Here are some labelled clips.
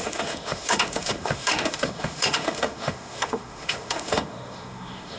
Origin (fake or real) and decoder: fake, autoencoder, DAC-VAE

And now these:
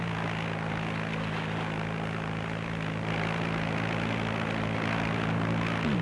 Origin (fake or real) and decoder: real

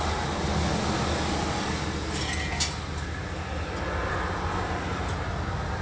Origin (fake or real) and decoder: real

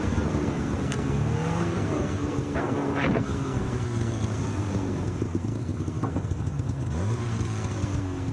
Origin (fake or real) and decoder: fake, codec, SNAC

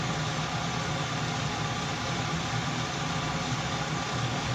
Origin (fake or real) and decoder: real